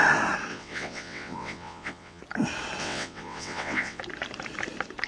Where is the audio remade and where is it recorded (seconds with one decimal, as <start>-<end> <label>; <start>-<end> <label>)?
0.0-0.5 recorded; 0.5-2.2 remade; 2.2-2.8 recorded; 2.8-4.0 remade; 4.0-5.1 recorded